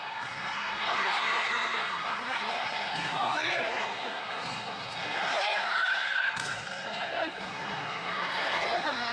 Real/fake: fake